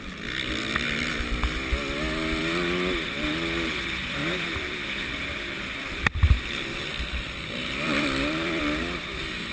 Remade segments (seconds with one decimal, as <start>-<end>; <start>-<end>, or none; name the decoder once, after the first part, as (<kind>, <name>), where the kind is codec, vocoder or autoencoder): 4.2-8.6 (vocoder, BigVGAN v2)